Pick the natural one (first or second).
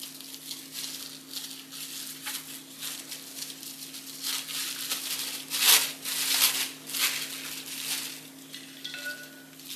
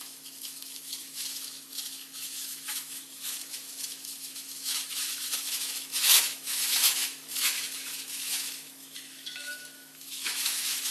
first